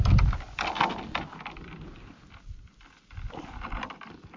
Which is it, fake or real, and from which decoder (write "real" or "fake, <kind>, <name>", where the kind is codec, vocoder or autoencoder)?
real